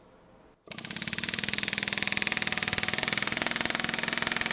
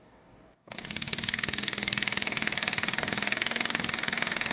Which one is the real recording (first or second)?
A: first